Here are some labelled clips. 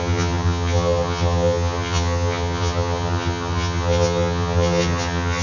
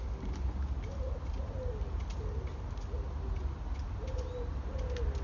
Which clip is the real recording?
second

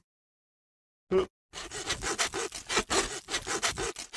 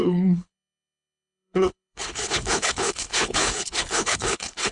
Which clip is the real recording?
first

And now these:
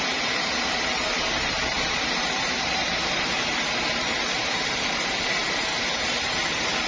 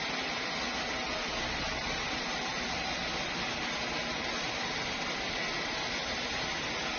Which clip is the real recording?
second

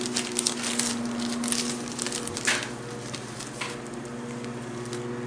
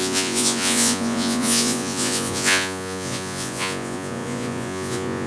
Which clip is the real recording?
first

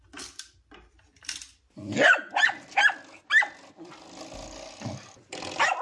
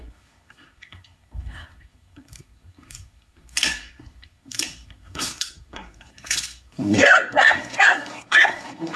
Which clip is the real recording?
first